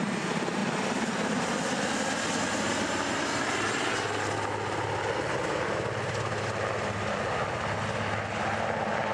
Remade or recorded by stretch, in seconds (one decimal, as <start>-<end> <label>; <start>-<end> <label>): 0.0-9.1 recorded

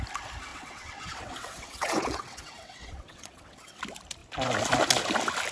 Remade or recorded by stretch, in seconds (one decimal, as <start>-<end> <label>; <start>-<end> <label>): 0.0-0.5 recorded; 0.5-3.8 remade; 3.8-5.5 recorded

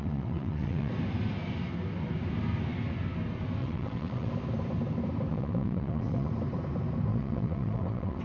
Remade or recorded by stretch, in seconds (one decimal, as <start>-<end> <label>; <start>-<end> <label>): 0.0-0.9 remade; 0.9-3.6 recorded; 3.6-4.3 remade; 4.3-5.3 recorded; 5.3-6.3 remade; 6.3-7.1 recorded; 7.1-8.2 remade